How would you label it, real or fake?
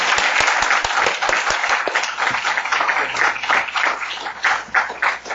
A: real